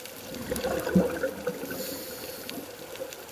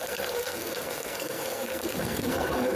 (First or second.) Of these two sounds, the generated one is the second